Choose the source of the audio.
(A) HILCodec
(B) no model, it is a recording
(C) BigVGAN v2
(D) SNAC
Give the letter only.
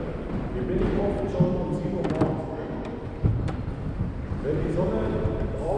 B